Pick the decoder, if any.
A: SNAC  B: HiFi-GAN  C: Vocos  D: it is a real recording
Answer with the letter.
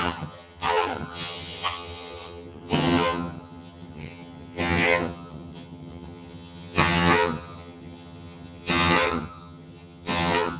B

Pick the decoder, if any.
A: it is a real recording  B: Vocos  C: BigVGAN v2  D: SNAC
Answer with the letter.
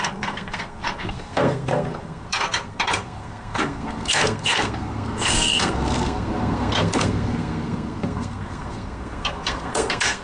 D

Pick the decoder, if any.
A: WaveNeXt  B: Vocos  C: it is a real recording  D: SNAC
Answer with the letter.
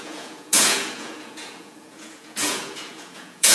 B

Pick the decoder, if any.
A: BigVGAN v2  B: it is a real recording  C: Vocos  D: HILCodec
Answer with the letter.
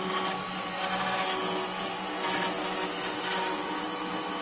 B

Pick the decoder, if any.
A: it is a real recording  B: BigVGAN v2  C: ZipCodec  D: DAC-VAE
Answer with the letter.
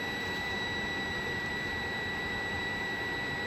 B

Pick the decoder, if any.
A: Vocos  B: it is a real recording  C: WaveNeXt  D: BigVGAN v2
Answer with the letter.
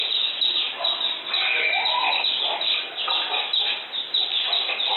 B